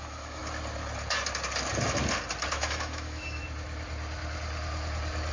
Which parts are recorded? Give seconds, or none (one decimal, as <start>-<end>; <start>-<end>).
0.4-2.5; 3.4-5.3